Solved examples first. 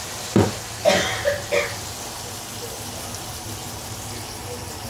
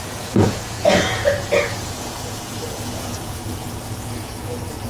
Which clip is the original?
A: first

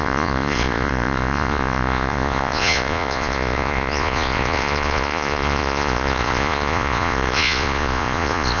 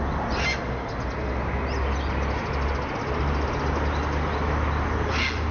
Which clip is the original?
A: second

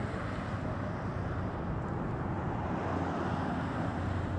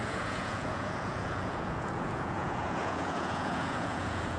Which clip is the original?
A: first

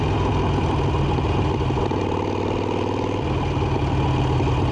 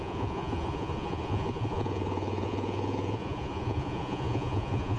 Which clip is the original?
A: first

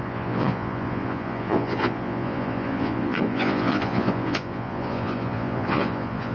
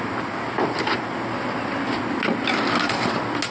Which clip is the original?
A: second